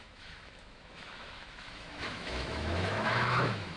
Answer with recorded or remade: remade